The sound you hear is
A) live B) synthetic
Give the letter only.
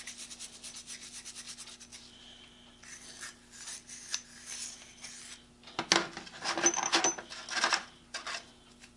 A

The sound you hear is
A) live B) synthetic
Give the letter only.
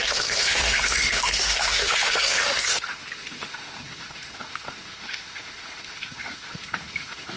B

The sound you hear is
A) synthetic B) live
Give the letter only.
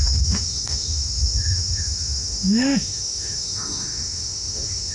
A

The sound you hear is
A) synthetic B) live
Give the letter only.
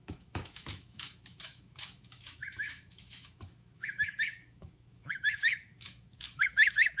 A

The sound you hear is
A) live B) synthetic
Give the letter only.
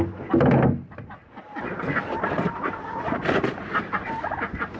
A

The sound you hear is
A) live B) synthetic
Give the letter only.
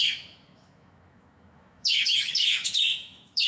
B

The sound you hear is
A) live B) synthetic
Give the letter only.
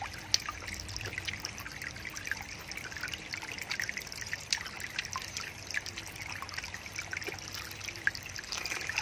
A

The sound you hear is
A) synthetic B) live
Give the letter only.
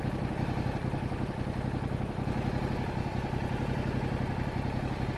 B